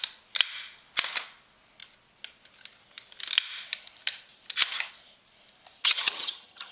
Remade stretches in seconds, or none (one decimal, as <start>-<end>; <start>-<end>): 5.8-6.7